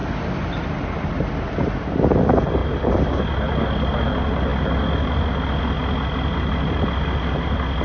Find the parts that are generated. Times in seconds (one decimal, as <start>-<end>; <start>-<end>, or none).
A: none